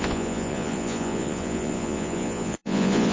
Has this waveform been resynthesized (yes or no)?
yes